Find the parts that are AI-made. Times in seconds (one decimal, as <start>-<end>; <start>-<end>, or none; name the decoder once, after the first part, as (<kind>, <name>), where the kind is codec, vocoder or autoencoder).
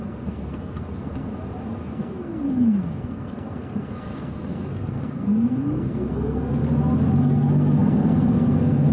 0.0-1.3 (codec, SNAC); 1.9-6.6; 7.2-8.9